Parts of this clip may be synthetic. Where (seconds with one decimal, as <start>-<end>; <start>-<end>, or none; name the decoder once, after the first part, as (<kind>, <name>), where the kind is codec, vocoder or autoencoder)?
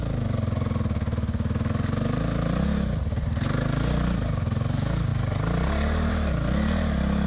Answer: none